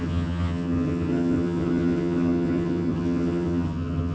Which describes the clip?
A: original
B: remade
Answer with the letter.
B